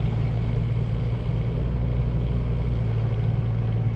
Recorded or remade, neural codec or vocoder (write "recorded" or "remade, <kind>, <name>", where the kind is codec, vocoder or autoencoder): recorded